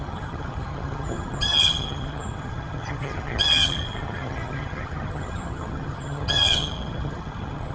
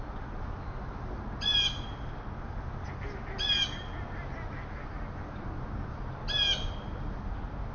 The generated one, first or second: first